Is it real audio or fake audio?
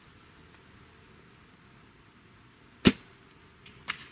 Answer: real